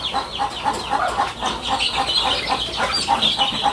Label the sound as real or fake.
real